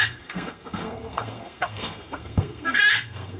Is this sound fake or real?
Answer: fake